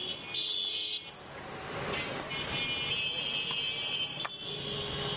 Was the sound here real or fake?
real